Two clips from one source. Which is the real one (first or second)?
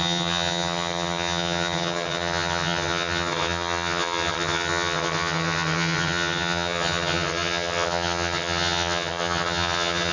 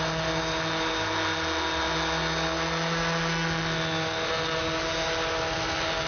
second